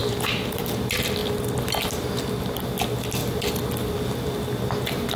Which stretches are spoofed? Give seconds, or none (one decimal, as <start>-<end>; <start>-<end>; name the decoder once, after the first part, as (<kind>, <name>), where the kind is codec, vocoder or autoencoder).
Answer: 0.0-0.6 (vocoder, BigVGAN v2)